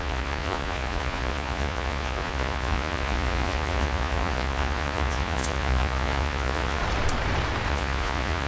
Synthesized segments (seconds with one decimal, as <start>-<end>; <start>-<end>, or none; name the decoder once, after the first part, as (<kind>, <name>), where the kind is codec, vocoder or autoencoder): 0.0-6.8 (vocoder, Vocos); 7.7-8.5